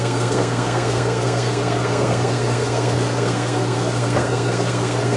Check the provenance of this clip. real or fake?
fake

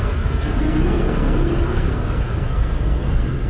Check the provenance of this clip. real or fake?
fake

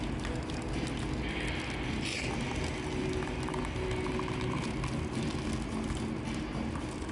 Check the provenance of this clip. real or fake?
real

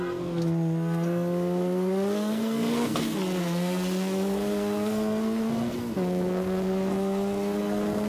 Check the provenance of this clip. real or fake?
fake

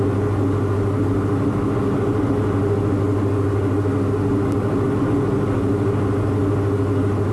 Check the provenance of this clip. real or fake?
real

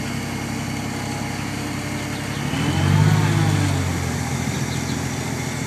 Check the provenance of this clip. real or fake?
real